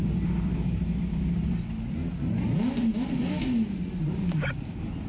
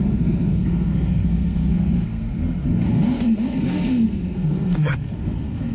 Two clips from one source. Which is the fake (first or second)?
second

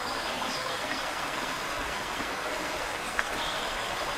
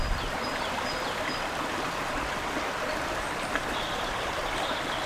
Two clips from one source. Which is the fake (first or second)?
first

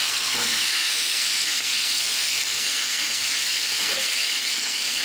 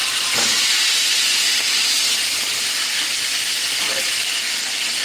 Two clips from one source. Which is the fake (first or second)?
first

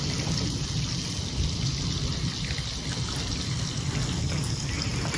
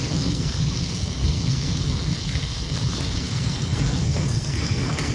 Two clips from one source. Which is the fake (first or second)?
second